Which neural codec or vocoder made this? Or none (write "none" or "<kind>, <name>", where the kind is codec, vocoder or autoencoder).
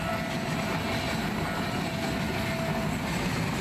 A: none